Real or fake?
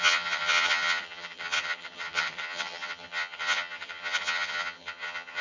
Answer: fake